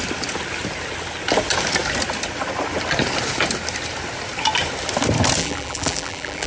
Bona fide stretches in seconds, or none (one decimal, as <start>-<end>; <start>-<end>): 0.0-5.4